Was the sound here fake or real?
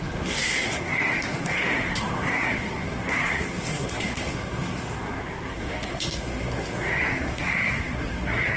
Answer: fake